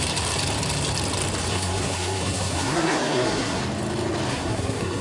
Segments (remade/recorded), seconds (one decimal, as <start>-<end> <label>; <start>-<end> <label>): 0.0-1.5 recorded; 1.5-3.6 remade; 3.6-4.3 recorded; 4.3-5.0 remade

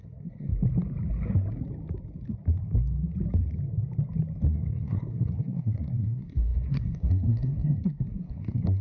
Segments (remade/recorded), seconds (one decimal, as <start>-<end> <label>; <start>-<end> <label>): 0.0-0.5 remade; 0.5-4.5 recorded; 4.5-8.8 remade

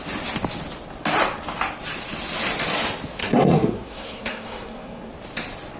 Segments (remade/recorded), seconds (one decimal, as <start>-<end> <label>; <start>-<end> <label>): 0.0-3.2 recorded; 3.2-5.1 remade; 5.1-5.8 recorded

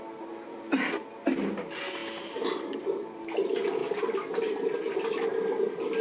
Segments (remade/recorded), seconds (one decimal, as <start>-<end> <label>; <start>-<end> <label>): 0.0-6.0 recorded

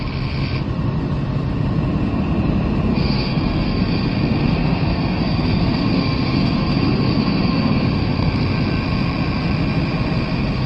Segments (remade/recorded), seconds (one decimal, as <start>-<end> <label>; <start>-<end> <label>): 0.0-2.9 recorded; 2.9-3.8 remade; 3.8-4.6 recorded; 4.6-8.3 remade; 8.3-10.7 recorded